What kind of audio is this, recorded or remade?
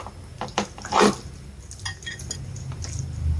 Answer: recorded